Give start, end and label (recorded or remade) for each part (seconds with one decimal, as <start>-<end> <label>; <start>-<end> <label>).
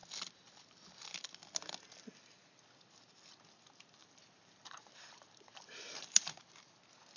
0.0-4.0 recorded; 4.0-6.8 remade; 6.8-7.2 recorded